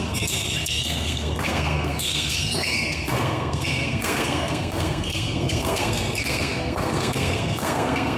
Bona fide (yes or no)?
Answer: no